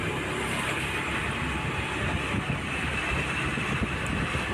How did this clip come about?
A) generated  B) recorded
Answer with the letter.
B